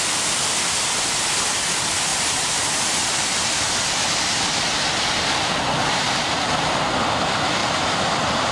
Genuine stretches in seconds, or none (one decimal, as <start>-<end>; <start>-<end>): 0.0-2.1; 6.8-7.6